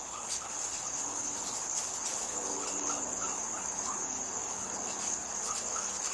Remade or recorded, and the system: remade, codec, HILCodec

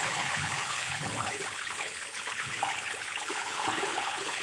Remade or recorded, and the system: remade, codec, HILCodec